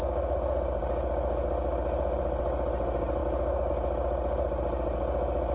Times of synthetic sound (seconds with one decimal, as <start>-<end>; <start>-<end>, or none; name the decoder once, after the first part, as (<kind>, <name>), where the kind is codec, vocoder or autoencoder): none